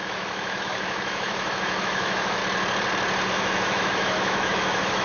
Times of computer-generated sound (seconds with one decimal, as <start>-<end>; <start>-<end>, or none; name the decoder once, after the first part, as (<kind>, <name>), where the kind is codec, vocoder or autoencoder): 0.0-2.4 (autoencoder, DAC-VAE); 3.3-5.0